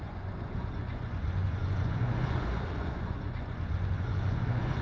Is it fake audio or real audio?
fake